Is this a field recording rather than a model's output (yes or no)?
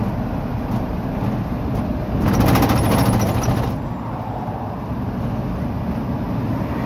yes